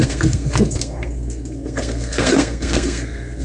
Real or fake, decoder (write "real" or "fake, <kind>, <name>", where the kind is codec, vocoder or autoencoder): fake, codec, SNAC